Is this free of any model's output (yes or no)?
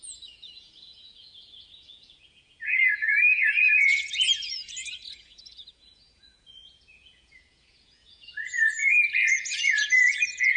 no